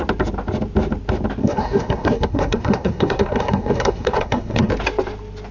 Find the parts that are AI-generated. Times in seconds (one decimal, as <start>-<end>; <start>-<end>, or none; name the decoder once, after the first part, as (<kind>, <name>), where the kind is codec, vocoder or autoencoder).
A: 1.4-4.7 (codec, SNAC)